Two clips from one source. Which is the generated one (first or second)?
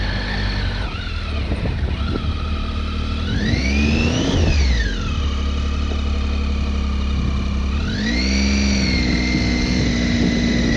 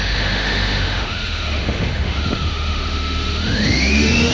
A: second